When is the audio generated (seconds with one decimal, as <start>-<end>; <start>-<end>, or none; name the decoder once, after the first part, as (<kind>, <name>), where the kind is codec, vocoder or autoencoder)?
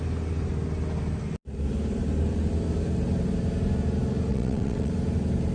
4.3-4.9 (vocoder, WaveNeXt)